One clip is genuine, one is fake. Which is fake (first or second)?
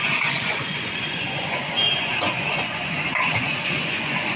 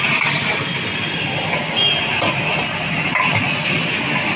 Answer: first